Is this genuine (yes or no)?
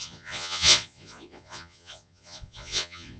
no